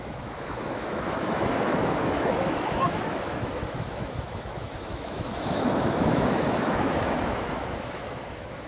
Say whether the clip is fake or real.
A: fake